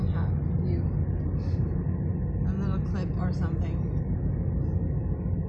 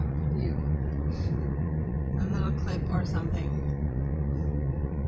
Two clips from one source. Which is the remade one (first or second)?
second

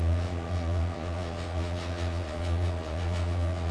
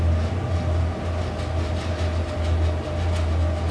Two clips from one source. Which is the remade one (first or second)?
first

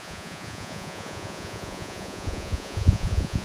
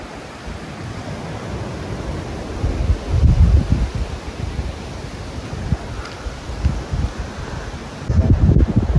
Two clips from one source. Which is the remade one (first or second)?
first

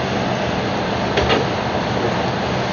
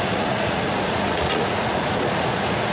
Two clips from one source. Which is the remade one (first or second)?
second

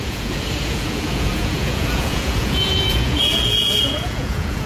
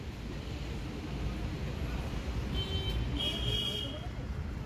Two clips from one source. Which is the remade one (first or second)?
first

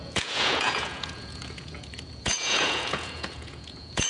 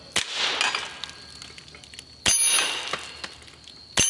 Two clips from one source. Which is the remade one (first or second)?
first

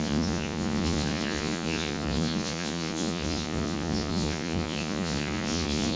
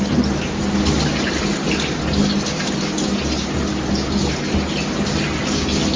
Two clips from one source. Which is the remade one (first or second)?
first